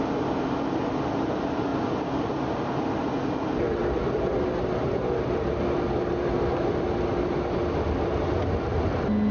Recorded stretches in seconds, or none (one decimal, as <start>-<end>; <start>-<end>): 0.0-9.3